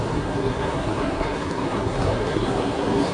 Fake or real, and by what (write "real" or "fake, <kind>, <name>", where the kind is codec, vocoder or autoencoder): fake, codec, SNAC